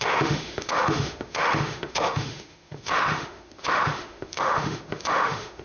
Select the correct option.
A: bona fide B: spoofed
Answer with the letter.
B